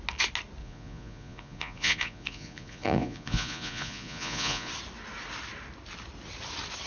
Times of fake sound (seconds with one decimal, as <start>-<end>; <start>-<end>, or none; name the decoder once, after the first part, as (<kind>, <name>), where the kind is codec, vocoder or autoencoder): 0.6-4.7 (vocoder, Vocos)